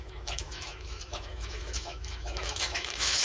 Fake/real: fake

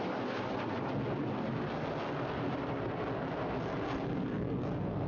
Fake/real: real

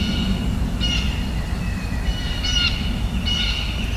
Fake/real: real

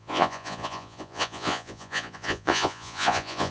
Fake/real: fake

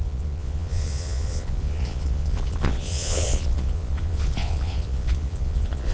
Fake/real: fake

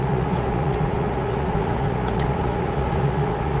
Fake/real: fake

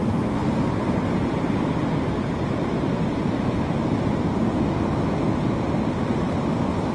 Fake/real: real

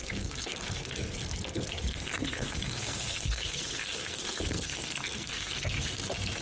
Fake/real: fake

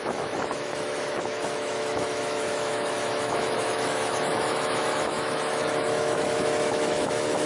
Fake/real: fake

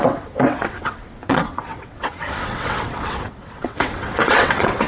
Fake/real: fake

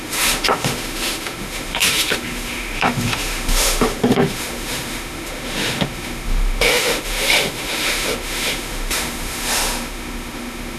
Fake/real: fake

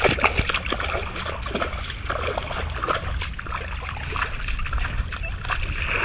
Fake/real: real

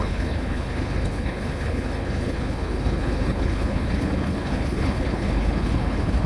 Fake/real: fake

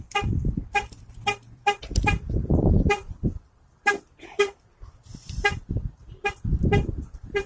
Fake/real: fake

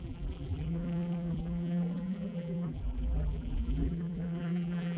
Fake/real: fake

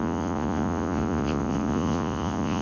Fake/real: fake